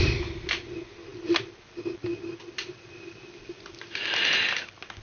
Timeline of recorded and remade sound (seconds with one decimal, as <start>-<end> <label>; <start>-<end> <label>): 0.0-5.0 recorded